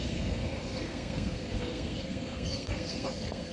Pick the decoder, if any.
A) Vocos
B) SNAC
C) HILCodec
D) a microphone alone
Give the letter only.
B